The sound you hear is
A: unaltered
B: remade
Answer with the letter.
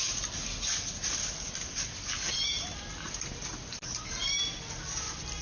A